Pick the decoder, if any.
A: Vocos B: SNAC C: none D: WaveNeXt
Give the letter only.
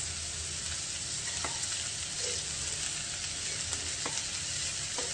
C